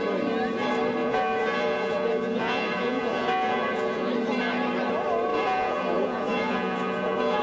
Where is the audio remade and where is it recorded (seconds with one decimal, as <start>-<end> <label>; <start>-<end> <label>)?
0.0-1.0 recorded; 1.0-4.1 remade; 4.1-5.3 recorded; 5.3-7.4 remade